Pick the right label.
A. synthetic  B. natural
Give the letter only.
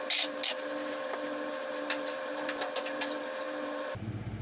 A